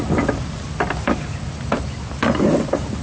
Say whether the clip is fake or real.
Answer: real